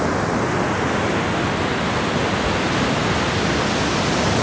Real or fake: real